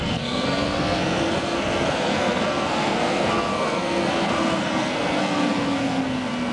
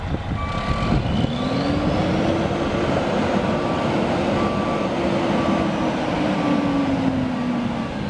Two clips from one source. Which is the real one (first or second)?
second